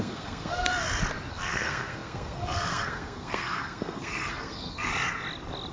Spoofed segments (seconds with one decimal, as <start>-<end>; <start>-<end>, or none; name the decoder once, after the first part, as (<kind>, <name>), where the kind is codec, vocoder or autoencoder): 0.0-0.7 (codec, SNAC); 1.3-4.9